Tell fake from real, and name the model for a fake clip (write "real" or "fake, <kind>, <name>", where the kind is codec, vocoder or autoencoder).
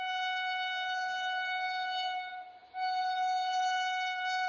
real